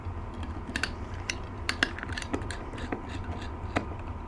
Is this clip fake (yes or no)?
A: no